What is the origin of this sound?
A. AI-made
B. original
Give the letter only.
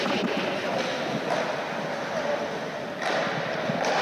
B